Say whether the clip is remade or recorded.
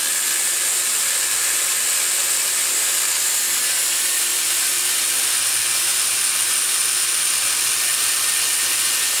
recorded